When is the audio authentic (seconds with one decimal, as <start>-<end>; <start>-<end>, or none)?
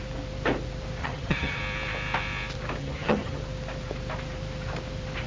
0.0-1.0; 1.6-2.8; 3.4-5.3